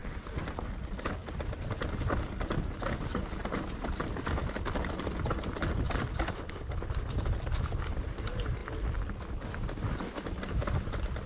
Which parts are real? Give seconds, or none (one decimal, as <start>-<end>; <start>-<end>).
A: 0.0-11.3